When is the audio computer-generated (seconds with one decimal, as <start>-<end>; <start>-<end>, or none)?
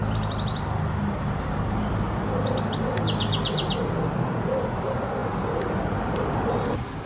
none